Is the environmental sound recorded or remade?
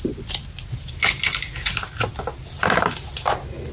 recorded